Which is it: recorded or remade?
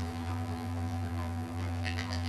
remade